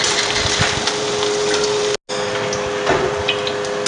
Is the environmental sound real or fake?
real